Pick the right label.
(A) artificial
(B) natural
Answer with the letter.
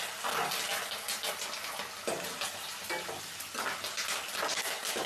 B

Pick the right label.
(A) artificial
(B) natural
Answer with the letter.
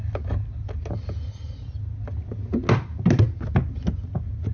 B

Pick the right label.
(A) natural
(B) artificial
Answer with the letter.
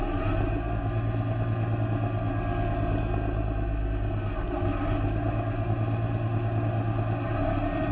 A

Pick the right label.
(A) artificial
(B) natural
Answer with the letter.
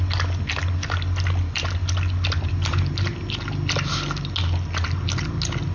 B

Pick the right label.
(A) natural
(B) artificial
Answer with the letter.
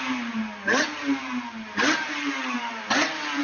B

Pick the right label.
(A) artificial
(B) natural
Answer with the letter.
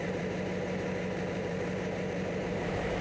A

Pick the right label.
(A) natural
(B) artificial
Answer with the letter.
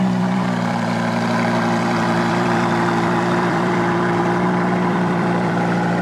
B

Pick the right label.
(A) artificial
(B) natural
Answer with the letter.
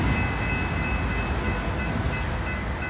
B